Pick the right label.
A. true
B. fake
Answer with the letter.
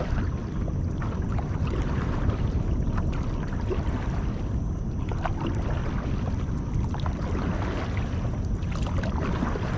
A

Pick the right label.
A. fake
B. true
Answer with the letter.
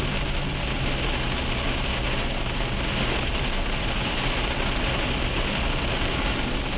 B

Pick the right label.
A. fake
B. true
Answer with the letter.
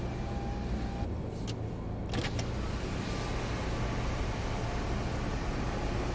B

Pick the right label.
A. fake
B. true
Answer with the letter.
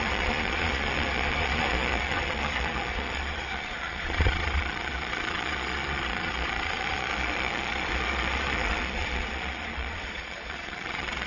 A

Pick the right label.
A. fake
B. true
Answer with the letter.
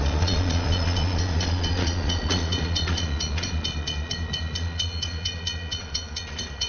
A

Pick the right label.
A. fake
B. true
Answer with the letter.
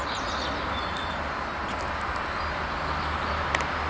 B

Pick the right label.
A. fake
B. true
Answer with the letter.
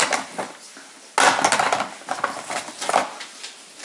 B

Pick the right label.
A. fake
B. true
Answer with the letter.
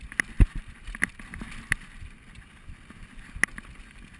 B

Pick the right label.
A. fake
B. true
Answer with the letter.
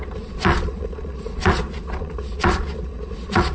A